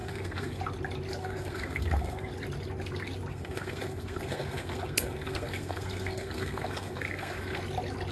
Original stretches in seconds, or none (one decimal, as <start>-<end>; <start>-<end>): 0.6-1.2; 2.3-3.3; 7.6-8.1